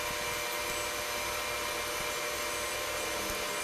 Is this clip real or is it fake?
real